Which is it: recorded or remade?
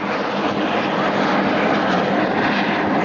recorded